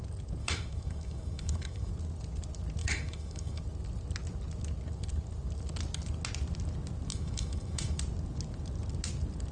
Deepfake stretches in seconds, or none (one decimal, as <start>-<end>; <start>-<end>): 0.4-1.9; 2.8-3.6; 7.1-8.0